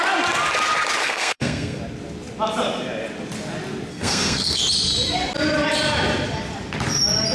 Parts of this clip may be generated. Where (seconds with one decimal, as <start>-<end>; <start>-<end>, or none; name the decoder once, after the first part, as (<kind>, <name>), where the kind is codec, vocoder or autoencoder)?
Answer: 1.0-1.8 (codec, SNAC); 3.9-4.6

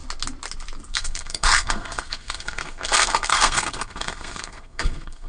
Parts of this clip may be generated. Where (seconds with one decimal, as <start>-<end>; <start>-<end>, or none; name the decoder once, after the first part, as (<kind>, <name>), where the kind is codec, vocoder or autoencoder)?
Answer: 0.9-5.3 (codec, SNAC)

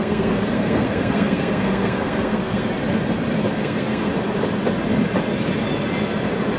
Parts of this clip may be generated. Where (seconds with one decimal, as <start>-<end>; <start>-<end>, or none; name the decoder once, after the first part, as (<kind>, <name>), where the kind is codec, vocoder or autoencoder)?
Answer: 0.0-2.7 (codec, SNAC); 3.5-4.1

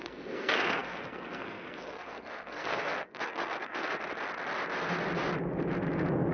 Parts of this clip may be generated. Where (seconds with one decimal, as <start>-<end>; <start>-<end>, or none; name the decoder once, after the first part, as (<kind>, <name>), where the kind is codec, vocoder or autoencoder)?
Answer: 0.0-4.1 (codec, SNAC)

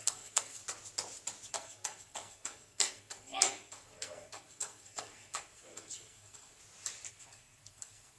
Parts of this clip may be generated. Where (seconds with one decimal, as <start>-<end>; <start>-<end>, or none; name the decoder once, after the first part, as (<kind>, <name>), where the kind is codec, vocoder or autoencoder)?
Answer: 0.0-0.6 (codec, SNAC); 1.5-6.6; 7.1-8.2